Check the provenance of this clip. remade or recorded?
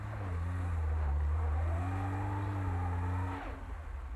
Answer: recorded